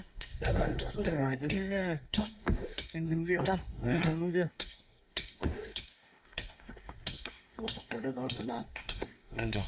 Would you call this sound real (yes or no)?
no